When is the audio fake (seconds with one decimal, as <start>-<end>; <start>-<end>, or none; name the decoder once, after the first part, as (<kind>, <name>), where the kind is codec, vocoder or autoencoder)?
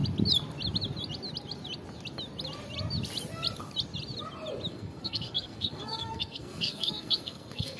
4.7-7.8 (codec, SNAC)